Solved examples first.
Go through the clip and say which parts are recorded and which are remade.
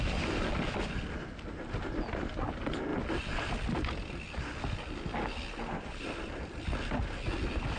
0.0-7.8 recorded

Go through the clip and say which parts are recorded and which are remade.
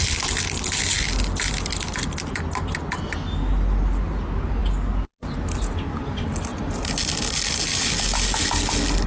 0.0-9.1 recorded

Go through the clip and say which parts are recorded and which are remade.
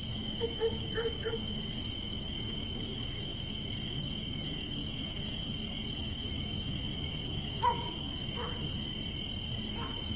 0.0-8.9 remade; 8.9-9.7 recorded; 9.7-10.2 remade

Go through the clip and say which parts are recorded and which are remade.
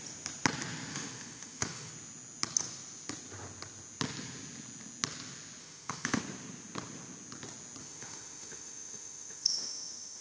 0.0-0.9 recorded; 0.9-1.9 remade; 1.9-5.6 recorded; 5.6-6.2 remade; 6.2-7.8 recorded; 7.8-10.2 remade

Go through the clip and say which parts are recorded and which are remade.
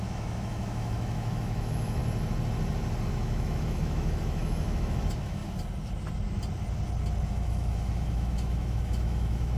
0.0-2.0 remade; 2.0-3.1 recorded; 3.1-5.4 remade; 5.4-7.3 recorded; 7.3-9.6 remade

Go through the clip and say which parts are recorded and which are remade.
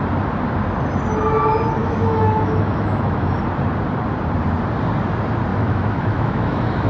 0.0-1.8 recorded; 1.8-3.4 remade; 3.4-5.5 recorded; 5.5-6.9 remade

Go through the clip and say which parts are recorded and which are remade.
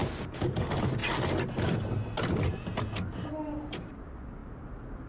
0.0-5.1 recorded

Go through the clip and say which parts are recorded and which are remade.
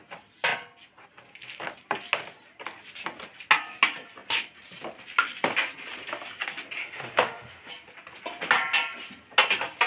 0.0-6.8 recorded; 6.8-7.7 remade; 7.7-9.9 recorded